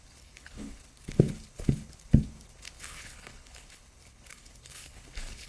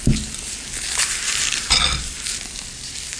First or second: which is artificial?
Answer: first